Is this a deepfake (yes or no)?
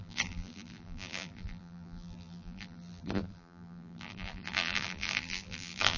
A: yes